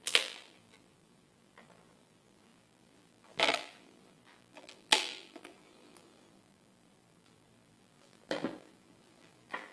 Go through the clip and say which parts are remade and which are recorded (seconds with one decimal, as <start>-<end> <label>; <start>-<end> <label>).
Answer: 0.0-9.7 remade